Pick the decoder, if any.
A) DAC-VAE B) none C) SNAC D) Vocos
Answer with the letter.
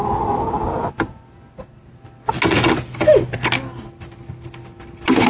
B